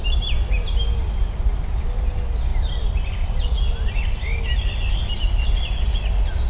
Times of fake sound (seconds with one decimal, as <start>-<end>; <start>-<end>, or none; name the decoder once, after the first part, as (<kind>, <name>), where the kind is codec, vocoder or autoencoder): none